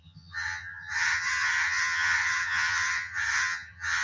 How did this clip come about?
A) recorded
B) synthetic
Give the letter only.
B